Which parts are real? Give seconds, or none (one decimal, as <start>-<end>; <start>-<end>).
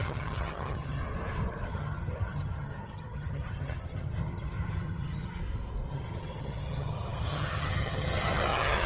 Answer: 1.0-1.7; 5.4-5.9